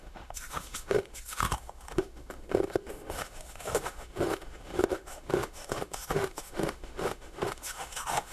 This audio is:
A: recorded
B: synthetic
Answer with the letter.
B